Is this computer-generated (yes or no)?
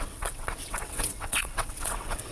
yes